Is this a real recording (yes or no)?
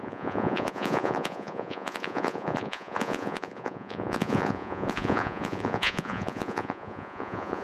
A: no